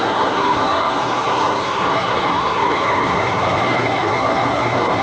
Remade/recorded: remade